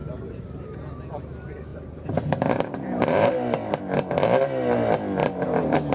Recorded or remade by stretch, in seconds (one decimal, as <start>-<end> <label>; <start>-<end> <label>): 0.0-0.8 remade; 0.8-1.7 recorded; 1.7-3.8 remade; 3.8-5.2 recorded; 5.2-5.9 remade